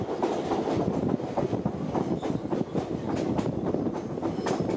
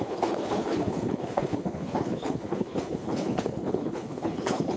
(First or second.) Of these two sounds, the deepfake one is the second